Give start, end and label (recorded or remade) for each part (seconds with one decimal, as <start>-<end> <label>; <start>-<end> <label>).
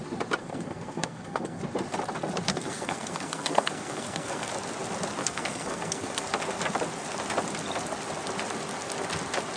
0.0-0.4 recorded; 0.4-1.6 remade; 1.6-2.5 recorded; 2.5-4.5 remade; 4.5-5.2 recorded; 5.2-6.1 remade; 6.1-9.6 recorded